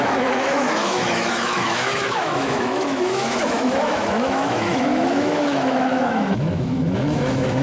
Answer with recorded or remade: remade